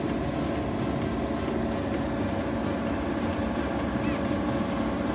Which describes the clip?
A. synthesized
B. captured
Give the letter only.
B